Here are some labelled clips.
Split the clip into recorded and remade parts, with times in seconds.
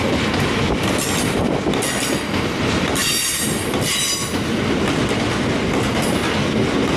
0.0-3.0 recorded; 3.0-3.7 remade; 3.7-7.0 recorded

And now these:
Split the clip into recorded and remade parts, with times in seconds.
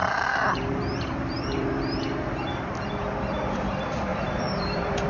0.0-2.9 remade; 2.9-4.1 recorded; 4.1-5.1 remade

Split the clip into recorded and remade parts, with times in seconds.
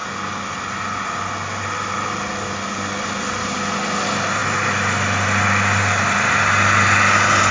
0.0-7.5 recorded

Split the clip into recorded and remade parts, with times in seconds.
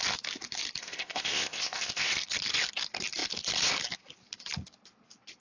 0.0-0.8 recorded; 0.8-2.1 remade; 2.1-5.4 recorded